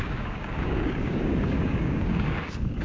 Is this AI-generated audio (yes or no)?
yes